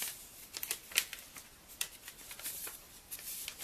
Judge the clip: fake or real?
real